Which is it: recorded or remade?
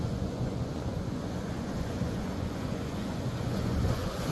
remade